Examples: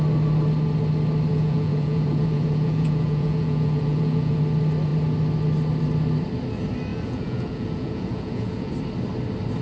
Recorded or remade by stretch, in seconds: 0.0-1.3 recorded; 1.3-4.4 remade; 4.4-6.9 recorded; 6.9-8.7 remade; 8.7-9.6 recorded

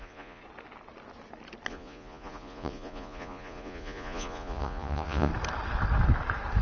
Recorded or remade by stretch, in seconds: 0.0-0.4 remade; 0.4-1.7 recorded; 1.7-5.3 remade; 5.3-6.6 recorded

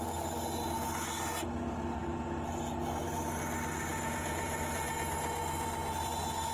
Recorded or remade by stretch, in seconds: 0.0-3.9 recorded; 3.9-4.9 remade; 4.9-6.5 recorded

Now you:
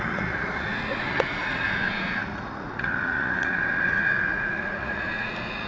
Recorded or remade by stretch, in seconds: 0.0-5.7 remade

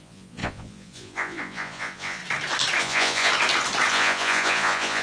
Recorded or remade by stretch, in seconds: 0.0-2.2 remade; 2.2-2.8 recorded; 2.8-3.3 remade; 3.3-3.9 recorded; 3.9-5.0 remade

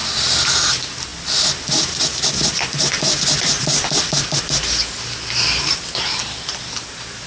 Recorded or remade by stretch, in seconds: 0.0-7.3 recorded